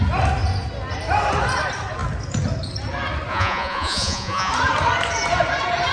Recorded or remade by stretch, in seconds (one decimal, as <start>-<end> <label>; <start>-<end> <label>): 0.0-3.3 recorded; 3.3-4.5 remade; 4.5-5.9 recorded